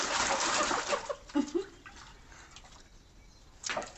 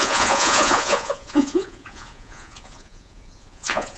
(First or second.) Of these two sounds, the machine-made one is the second